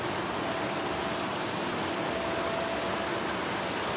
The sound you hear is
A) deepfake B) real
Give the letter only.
B